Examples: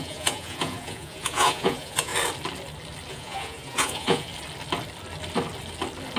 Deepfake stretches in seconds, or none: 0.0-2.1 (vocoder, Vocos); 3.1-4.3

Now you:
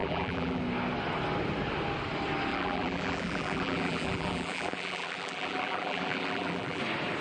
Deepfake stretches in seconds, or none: 0.0-0.6 (vocoder, BigVGAN v2); 2.5-6.8